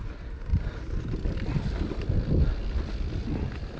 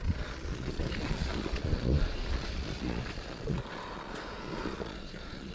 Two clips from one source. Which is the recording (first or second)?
first